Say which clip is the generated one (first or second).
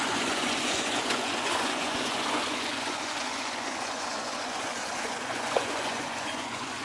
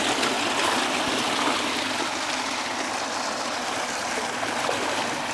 first